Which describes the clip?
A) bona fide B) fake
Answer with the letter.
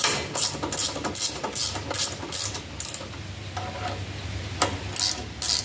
A